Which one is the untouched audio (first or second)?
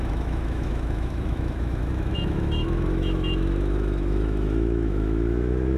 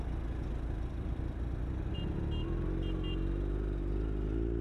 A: second